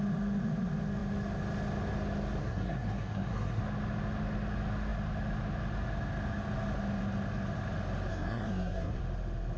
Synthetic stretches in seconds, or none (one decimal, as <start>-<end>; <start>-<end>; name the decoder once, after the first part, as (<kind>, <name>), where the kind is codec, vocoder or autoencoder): 2.4-3.6 (codec, SNAC); 8.1-9.0